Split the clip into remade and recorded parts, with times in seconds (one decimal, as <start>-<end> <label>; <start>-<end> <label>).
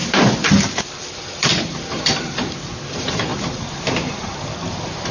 0.0-1.4 recorded; 1.4-5.1 remade